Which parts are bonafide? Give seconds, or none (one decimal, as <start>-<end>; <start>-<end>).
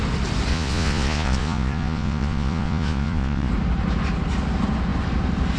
0.0-0.5; 3.5-5.6